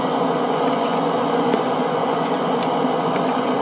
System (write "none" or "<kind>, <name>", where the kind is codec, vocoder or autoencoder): vocoder, Vocos